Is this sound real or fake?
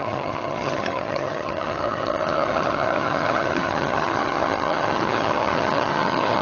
fake